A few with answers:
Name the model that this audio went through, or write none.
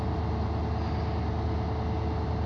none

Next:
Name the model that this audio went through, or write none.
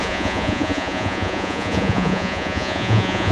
vocoder, Vocos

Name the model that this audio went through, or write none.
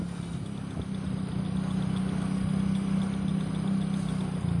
none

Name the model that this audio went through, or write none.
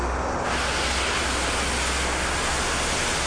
none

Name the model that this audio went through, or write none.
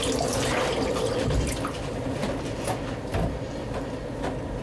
none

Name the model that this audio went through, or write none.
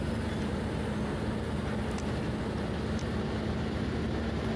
none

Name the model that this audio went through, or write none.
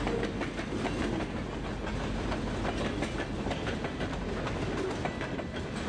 none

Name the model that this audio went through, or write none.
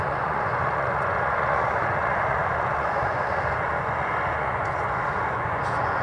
vocoder, Vocos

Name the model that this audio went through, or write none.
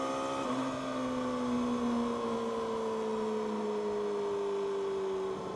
none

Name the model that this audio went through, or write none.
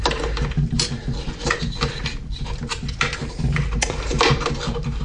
none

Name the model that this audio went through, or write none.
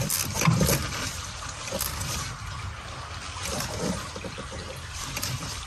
vocoder, BigVGAN v2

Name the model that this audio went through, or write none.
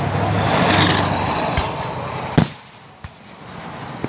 none